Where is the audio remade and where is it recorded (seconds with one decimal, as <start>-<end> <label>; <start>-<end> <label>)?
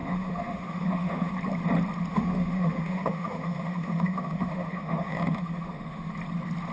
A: 0.0-1.3 remade; 1.3-2.1 recorded; 2.1-6.1 remade; 6.1-6.7 recorded